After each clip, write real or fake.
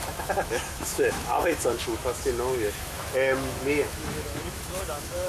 fake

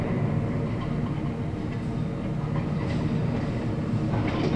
real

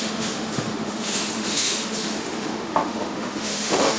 fake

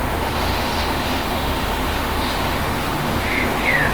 fake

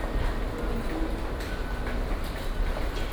real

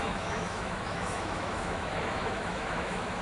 fake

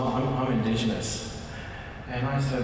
real